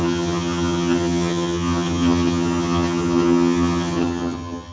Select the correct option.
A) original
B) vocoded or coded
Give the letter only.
B